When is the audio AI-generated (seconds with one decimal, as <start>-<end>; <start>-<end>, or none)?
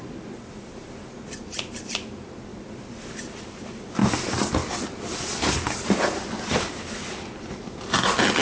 none